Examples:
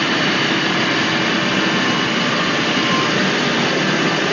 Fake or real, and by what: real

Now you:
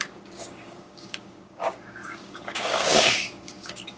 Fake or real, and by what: fake, codec, DAC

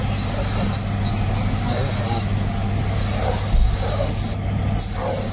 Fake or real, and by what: real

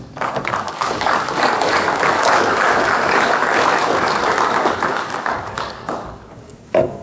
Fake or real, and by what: fake, codec, DAC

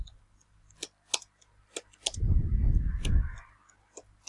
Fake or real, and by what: real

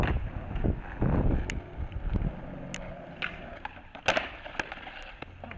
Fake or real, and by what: real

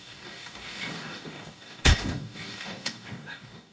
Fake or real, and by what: fake, codec, DAC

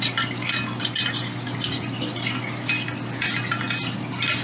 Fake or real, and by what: real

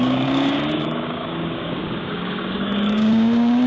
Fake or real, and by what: fake, codec, DAC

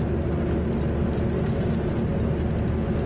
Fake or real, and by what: real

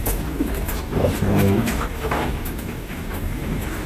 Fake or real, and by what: fake, codec, DAC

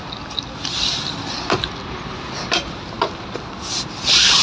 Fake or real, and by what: real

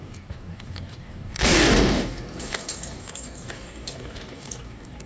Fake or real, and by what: fake, codec, DAC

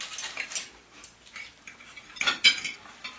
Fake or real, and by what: real